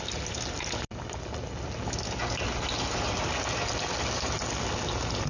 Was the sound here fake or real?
real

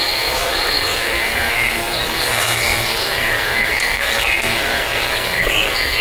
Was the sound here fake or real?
fake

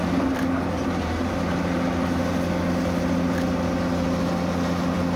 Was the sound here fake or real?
real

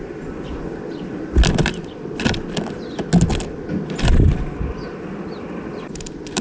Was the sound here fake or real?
real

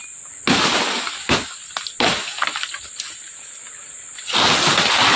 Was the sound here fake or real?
real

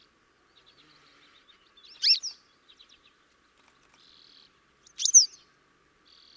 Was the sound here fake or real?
real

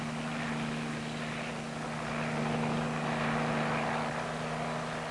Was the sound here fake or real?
real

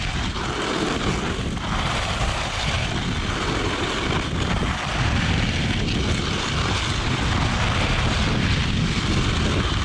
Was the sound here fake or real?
real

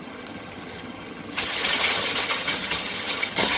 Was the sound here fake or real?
fake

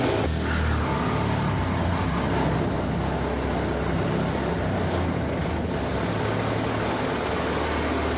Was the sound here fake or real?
real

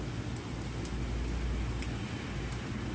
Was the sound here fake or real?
real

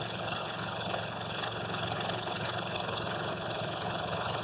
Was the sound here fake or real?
fake